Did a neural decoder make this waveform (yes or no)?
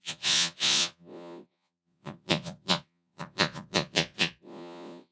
yes